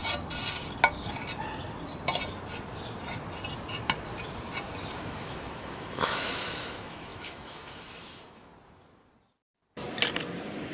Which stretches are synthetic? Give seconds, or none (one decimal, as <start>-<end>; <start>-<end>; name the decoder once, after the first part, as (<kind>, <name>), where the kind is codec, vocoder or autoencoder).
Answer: 5.0-8.5 (autoencoder, DAC-VAE)